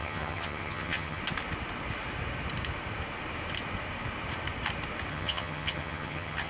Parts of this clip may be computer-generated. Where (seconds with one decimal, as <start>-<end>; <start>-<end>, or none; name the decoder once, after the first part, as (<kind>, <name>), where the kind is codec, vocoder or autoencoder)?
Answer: 0.0-1.2 (vocoder, HiFi-GAN); 5.1-6.5